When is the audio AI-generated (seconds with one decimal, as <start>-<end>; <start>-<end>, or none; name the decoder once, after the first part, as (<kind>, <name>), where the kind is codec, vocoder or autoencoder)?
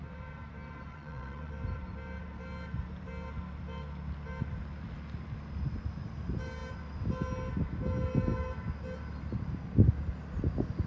0.9-1.5 (vocoder, WaveNeXt)